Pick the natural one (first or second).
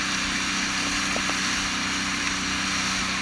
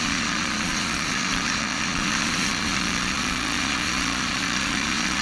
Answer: first